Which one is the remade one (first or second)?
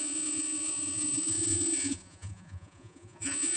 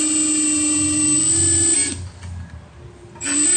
first